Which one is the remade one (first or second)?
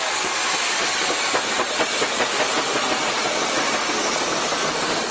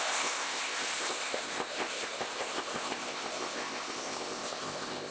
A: second